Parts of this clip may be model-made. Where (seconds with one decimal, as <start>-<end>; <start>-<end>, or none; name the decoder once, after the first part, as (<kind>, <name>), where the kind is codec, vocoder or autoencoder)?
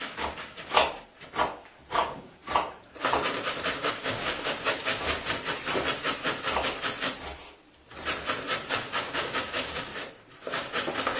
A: 0.0-0.8 (codec, DAC); 1.9-2.4; 3.7-4.9; 8.7-9.9